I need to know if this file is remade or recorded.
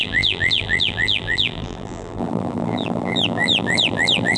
remade